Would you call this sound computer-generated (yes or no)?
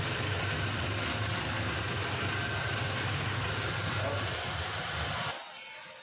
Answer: no